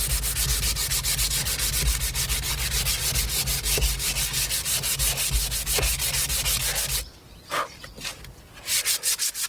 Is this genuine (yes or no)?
yes